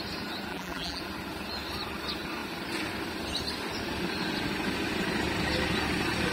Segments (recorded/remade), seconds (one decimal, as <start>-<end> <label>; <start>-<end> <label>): 0.0-0.5 recorded; 0.5-1.0 remade; 1.0-6.3 recorded